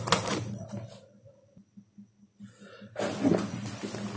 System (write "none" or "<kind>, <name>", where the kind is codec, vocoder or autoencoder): none